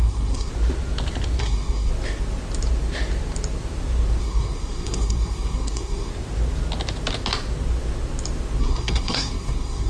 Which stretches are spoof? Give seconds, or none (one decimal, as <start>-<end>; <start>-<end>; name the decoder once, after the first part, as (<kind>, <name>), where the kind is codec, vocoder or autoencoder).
0.0-0.5 (codec, SNAC); 1.4-1.9; 4.2-6.1; 8.6-9.9